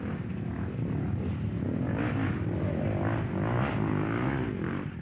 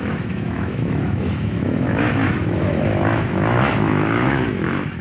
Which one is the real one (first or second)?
first